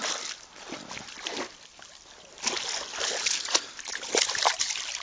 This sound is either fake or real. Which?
real